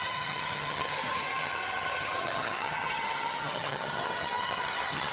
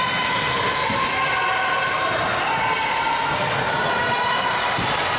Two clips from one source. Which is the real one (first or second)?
second